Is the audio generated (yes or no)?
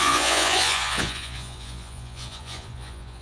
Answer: yes